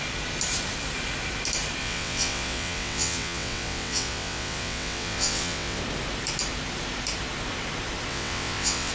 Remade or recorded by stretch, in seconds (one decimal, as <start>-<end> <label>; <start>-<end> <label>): 0.0-1.8 recorded; 1.8-5.8 remade; 5.8-8.1 recorded; 8.1-8.9 remade